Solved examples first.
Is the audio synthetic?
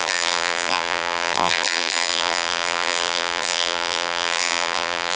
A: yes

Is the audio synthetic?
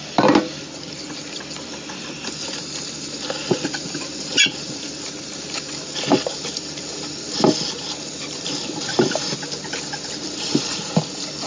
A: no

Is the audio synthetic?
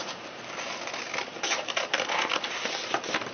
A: no